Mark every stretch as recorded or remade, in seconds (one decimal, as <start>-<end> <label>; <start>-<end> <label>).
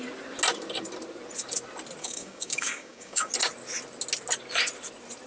0.0-2.0 recorded; 2.0-3.3 remade; 3.3-5.3 recorded